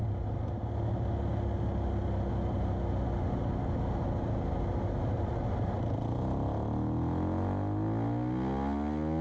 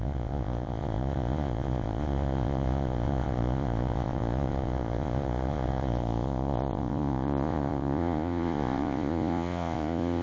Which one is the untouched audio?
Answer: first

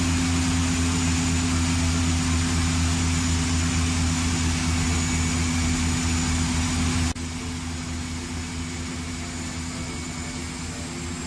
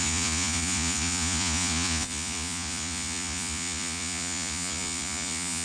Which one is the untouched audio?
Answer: first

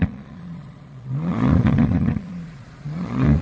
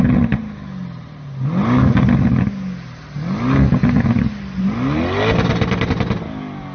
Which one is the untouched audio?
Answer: second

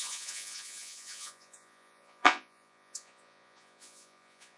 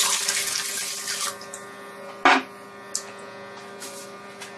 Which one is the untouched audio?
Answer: second